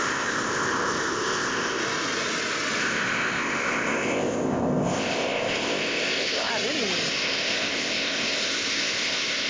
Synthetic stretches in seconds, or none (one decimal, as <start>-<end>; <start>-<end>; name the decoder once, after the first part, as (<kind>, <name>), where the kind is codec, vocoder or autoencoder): 0.0-1.8 (codec, ZipCodec); 2.8-6.5; 7.1-9.5